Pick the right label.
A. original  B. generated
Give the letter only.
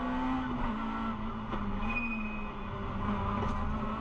A